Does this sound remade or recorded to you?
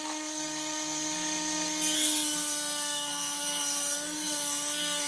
remade